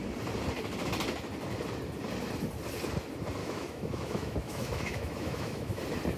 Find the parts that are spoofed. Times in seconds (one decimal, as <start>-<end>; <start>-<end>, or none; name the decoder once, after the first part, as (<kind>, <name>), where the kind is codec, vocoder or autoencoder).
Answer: 3.4-5.8 (autoencoder, DAC-VAE)